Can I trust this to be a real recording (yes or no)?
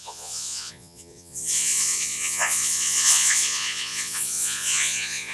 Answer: no